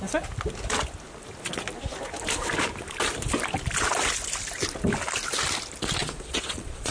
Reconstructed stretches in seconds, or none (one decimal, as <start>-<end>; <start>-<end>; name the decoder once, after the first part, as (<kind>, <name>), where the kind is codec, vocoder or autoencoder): 6.0-6.9 (vocoder, Vocos)